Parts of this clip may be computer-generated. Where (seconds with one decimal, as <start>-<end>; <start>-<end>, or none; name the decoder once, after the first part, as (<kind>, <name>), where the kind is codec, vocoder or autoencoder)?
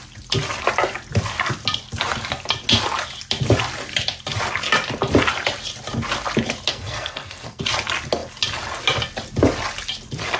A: 6.7-7.6 (codec, SNAC)